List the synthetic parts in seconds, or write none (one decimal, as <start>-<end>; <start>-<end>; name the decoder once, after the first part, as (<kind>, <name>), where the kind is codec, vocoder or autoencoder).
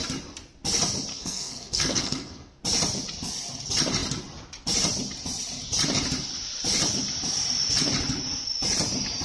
1.1-2.6 (codec, SNAC)